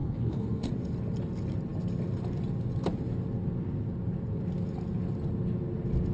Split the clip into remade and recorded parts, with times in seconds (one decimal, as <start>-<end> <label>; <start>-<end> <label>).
0.0-0.7 remade; 0.7-6.1 recorded